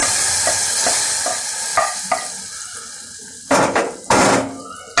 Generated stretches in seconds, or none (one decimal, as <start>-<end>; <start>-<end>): none